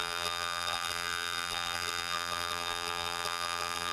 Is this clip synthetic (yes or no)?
yes